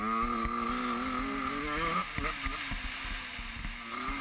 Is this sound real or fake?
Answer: real